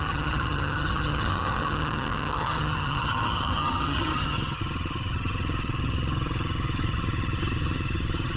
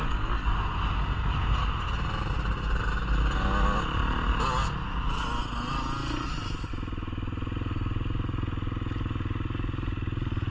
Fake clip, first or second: first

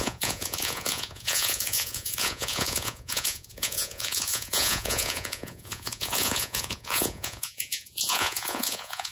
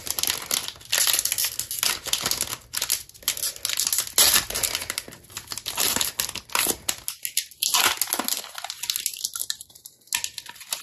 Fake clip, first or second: first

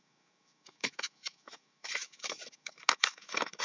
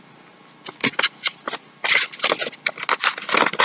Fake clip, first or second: first